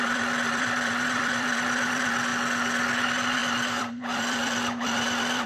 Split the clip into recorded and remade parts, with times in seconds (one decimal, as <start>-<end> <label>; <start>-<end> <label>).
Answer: 0.0-2.3 remade; 2.3-3.0 recorded; 3.0-5.5 remade